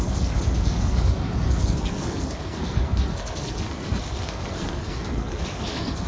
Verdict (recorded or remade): remade